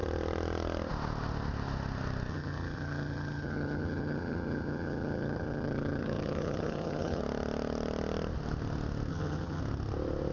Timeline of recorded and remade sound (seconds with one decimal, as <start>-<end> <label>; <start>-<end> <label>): 0.0-2.3 recorded; 2.3-7.2 remade; 7.2-9.1 recorded; 9.1-9.6 remade; 9.6-10.3 recorded